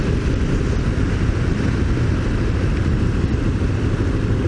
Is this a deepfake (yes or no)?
no